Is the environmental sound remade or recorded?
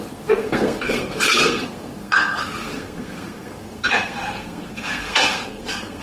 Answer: remade